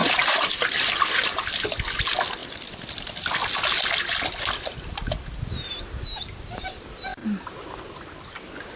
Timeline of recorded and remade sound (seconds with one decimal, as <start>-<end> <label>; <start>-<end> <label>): 0.0-0.8 remade; 0.8-8.8 recorded